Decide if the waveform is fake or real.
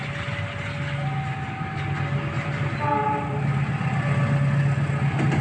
real